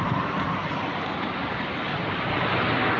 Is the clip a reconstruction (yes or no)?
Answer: no